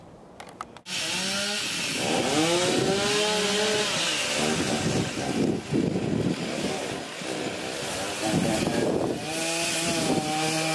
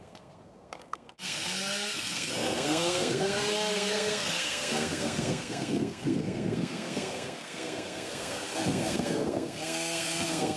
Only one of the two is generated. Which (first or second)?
second